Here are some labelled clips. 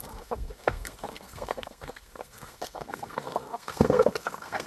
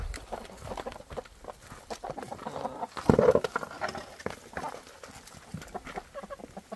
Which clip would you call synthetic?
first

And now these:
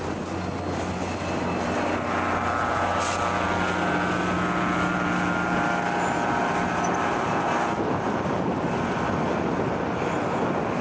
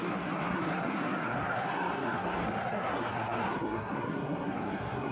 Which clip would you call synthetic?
second